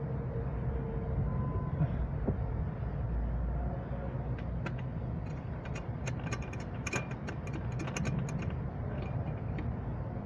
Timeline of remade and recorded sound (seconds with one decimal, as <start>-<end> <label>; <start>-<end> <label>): 0.0-5.0 recorded; 5.0-7.2 remade; 7.2-10.3 recorded